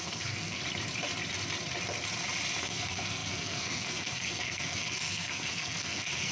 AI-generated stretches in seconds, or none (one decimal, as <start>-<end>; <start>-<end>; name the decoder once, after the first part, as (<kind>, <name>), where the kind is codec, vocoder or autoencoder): 0.0-0.6 (codec, SNAC); 2.6-6.3

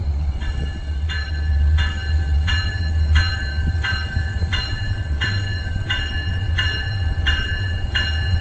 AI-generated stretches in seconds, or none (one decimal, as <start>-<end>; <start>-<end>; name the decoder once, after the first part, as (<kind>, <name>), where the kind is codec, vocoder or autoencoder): 0.0-8.4 (vocoder, WaveNeXt)

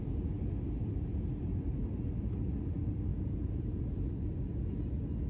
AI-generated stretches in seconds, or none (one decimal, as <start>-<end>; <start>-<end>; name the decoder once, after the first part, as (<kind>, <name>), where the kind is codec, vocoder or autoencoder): 3.1-3.9 (vocoder, Vocos)

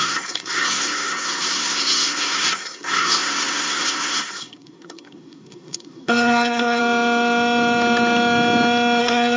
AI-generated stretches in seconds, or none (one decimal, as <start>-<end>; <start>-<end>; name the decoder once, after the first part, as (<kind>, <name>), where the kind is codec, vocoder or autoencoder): 0.0-6.8 (codec, SNAC); 9.0-9.4

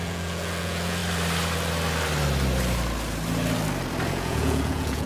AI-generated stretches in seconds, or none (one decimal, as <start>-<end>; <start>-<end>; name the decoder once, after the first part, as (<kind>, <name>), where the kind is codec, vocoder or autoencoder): 0.0-1.0 (vocoder, Vocos); 4.1-5.1

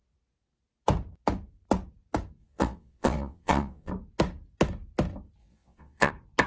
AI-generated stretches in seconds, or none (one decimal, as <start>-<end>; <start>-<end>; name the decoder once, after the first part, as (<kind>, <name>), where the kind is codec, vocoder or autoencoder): 2.4-3.9 (vocoder, WaveNeXt); 5.4-6.1

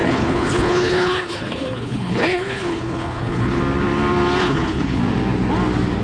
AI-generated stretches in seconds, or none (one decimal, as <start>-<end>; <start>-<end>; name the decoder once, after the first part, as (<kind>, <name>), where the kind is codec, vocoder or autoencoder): 0.0-3.6 (codec, HILCodec); 4.4-5.0